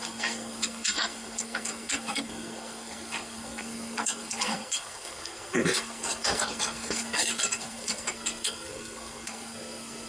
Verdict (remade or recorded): remade